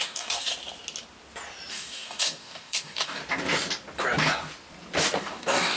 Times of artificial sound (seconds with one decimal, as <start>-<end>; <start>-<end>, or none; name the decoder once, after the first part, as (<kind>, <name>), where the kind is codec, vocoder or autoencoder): 0.0-0.5 (codec, DAC); 1.7-3.2; 5.2-5.8